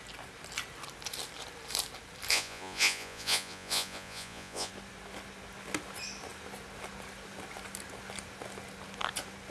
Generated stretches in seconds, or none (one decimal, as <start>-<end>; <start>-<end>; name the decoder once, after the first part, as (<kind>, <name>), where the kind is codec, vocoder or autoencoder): 2.3-4.7 (vocoder, Vocos)